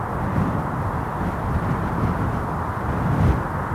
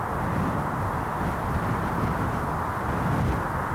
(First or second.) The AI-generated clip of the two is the first